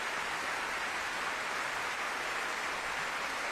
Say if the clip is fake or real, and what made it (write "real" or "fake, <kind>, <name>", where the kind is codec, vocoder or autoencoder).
real